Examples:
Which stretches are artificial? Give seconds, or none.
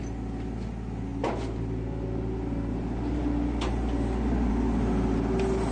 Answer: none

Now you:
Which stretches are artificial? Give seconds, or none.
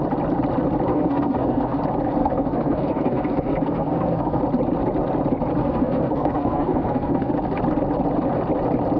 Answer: 0.9-1.8; 2.2-4.4; 5.6-7.3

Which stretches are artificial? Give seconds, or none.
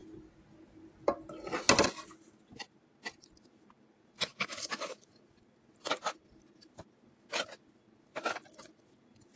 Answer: 4.3-5.1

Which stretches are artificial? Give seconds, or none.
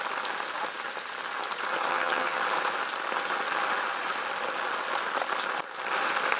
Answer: 1.9-2.4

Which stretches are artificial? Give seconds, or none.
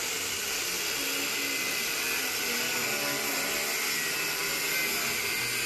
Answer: none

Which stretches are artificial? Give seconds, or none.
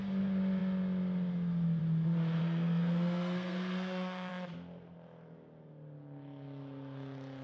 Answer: 2.4-4.3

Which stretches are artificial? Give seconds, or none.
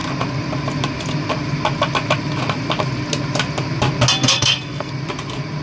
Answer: 4.2-4.9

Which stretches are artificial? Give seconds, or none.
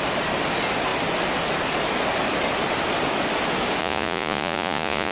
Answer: 3.8-5.1